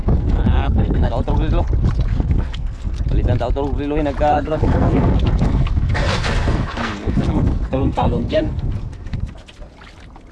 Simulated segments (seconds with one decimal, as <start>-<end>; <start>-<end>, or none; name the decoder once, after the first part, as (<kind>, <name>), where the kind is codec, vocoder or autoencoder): 0.0-1.1 (codec, SNAC); 2.1-3.0; 4.3-9.3